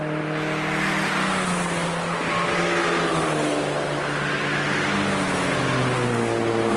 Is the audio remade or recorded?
recorded